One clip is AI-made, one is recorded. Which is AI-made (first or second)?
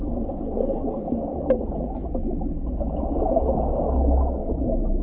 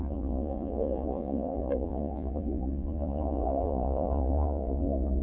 second